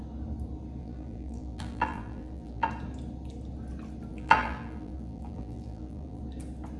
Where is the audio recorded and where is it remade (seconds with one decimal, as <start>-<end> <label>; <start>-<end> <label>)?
0.0-0.8 recorded; 0.8-2.7 remade; 2.7-4.1 recorded; 4.1-6.2 remade; 6.2-6.8 recorded